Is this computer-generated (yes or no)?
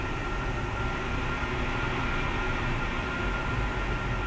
no